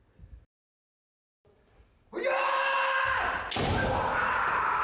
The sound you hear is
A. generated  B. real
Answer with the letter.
B